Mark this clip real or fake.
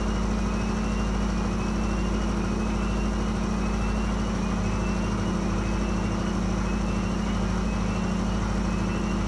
real